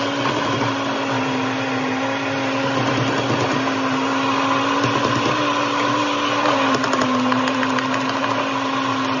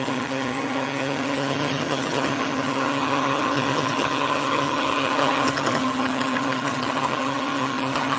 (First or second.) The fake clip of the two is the second